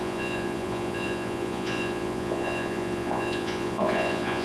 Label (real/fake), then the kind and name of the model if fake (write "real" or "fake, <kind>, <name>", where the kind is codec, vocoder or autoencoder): fake, vocoder, Vocos